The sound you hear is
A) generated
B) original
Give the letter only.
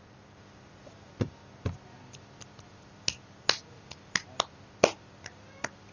B